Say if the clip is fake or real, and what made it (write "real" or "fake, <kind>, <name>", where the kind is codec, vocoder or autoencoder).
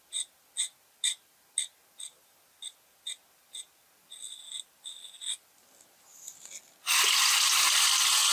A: real